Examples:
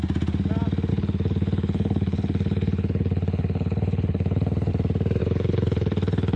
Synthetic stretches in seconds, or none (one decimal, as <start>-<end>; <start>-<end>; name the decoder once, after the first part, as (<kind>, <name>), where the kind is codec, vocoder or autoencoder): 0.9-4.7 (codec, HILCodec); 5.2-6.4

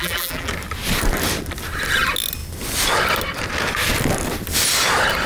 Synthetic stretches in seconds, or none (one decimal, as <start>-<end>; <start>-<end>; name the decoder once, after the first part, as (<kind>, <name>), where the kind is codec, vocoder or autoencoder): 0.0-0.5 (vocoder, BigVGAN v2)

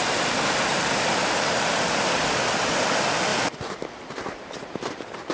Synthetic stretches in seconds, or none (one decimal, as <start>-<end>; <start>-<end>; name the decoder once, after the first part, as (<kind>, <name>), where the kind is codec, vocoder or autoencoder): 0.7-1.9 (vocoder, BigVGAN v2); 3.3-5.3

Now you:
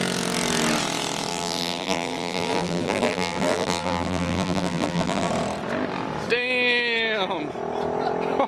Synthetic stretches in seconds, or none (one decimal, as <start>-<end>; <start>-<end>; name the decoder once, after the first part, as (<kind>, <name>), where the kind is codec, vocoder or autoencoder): 1.3-5.3 (vocoder, BigVGAN v2)